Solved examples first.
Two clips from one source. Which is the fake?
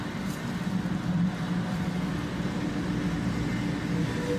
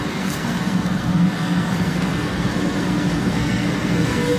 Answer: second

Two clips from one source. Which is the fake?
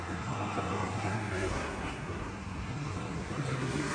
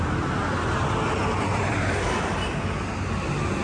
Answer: first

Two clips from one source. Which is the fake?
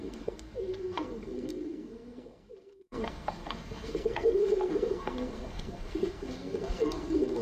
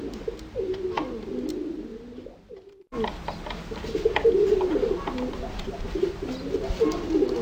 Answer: first